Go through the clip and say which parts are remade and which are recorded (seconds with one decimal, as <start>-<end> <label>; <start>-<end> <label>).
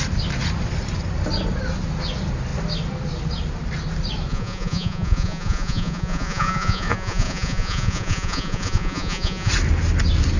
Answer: 0.0-4.3 recorded; 4.3-9.5 remade; 9.5-10.4 recorded